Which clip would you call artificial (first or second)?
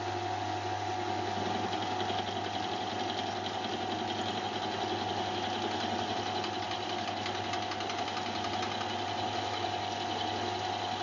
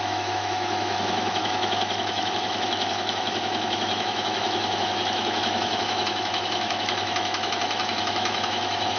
second